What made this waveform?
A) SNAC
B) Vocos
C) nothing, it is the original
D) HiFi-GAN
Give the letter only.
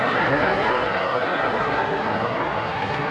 A